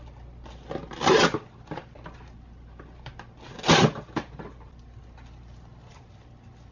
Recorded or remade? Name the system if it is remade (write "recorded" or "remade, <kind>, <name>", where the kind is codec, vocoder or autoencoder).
recorded